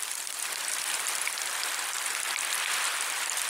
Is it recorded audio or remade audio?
remade